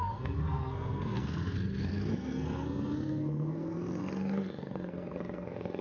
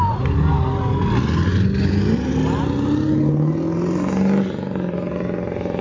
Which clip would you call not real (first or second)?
first